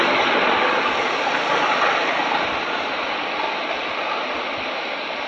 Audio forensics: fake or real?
real